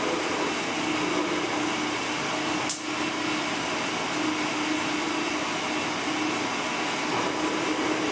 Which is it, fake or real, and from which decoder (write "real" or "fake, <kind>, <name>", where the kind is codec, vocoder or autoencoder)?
real